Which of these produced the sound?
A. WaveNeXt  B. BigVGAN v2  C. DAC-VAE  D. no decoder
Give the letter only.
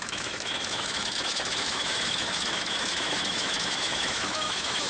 C